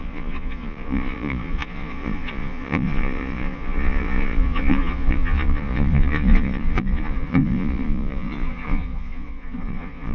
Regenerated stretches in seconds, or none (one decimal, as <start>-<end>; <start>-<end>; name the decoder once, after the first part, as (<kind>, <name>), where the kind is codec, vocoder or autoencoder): 0.0-10.1 (vocoder, Vocos)